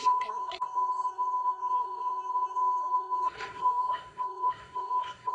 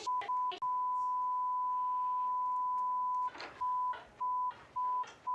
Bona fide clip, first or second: second